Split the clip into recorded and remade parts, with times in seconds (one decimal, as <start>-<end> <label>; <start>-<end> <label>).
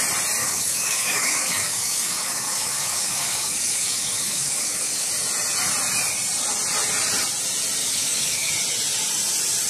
0.0-0.4 recorded; 0.4-5.1 remade; 5.1-7.8 recorded; 7.8-8.5 remade; 8.5-9.7 recorded